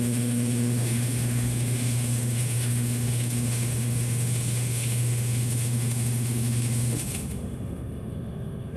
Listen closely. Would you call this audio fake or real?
fake